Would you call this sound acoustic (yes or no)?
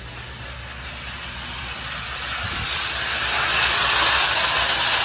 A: yes